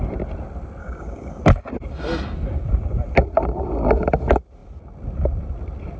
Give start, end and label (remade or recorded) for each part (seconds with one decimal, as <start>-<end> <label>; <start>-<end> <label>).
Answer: 0.0-0.8 recorded; 0.8-1.4 remade; 1.4-6.0 recorded